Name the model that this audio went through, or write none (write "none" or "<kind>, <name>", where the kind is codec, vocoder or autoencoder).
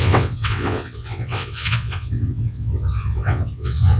vocoder, WaveNeXt